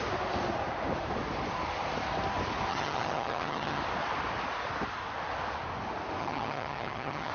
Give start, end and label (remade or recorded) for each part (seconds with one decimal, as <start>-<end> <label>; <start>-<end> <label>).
0.0-2.7 recorded; 2.7-3.8 remade; 3.8-6.2 recorded; 6.2-7.3 remade